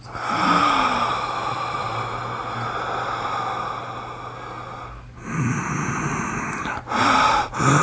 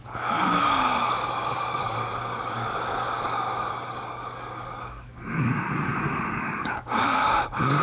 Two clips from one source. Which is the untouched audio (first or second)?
first